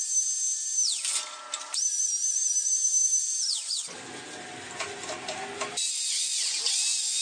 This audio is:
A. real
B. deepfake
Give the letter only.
A